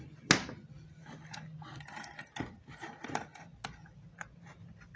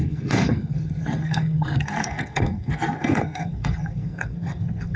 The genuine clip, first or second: first